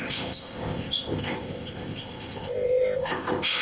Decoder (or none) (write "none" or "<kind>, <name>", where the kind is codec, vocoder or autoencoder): codec, ZipCodec